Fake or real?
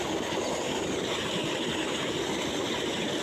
real